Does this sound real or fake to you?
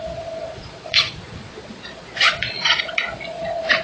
fake